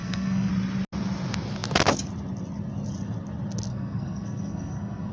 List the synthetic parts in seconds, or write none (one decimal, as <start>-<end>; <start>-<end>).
0.0-0.5; 3.7-5.1